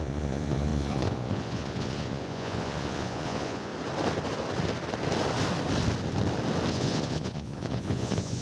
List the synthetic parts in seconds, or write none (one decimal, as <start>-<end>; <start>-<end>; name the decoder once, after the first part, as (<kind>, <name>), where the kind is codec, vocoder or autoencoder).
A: 0.0-3.7 (vocoder, Vocos); 6.7-8.4